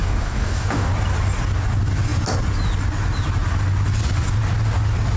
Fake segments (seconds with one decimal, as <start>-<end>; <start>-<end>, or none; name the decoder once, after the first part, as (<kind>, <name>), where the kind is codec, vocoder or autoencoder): 0.0-0.9 (codec, DAC)